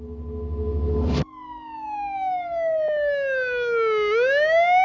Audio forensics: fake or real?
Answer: real